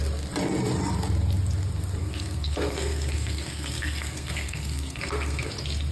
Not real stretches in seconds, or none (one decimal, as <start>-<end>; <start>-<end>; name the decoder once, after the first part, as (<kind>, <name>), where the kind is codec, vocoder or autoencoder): 2.0-5.5 (codec, SNAC)